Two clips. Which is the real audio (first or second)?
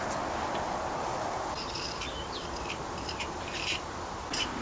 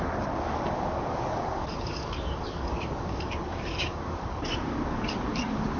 first